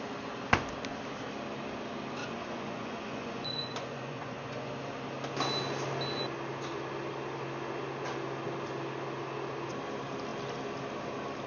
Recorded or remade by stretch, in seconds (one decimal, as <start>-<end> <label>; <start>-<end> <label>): 0.0-2.2 recorded; 2.2-4.7 remade; 4.7-11.5 recorded